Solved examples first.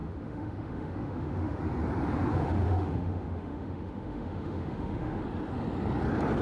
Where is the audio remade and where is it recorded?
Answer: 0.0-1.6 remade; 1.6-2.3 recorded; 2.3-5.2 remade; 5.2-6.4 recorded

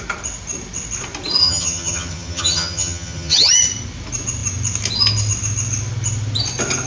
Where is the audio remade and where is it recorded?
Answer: 0.0-1.4 recorded; 1.4-3.5 remade; 3.5-6.9 recorded

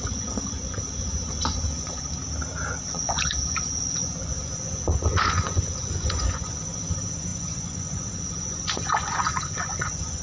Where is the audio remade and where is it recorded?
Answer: 0.0-2.2 remade; 2.2-2.8 recorded; 2.8-10.2 remade

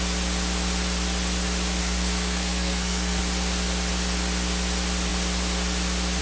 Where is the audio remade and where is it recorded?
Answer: 0.0-1.8 recorded; 1.8-3.2 remade; 3.2-6.2 recorded

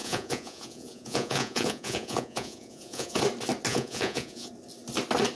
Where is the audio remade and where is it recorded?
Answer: 0.0-3.2 remade; 3.2-3.7 recorded; 3.7-4.5 remade; 4.5-5.3 recorded

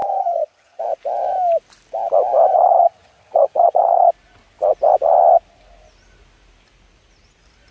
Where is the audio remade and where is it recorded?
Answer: 0.0-0.8 remade; 0.8-2.5 recorded; 2.5-4.1 remade; 4.1-7.7 recorded